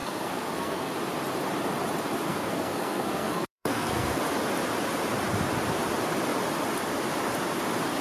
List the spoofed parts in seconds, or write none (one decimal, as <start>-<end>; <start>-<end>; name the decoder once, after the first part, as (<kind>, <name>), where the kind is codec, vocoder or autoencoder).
0.0-0.9 (codec, SNAC); 2.3-4.2

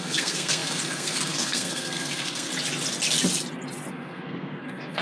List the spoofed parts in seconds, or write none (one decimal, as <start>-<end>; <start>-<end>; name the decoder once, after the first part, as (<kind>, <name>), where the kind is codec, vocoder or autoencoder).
0.0-2.5 (codec, SNAC); 3.9-5.0

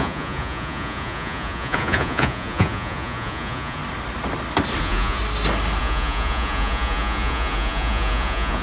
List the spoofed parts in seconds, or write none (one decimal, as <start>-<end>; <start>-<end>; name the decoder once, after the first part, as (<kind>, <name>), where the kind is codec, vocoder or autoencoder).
0.0-3.8 (vocoder, Vocos); 4.8-5.2; 5.8-8.6

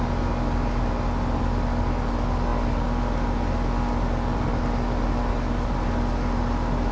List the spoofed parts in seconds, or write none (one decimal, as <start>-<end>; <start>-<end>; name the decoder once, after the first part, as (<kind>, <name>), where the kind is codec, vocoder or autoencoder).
none

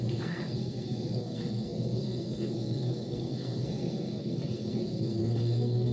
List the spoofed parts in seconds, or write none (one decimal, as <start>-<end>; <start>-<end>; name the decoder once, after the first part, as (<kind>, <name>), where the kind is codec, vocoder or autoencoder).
0.0-5.9 (codec, SNAC)

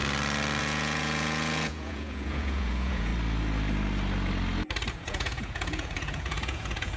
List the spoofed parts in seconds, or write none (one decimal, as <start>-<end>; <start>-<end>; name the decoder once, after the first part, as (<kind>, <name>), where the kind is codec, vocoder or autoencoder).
0.6-3.1 (vocoder, Vocos); 4.9-7.0